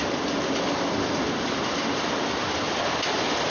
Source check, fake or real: fake